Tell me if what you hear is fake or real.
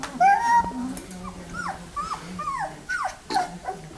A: real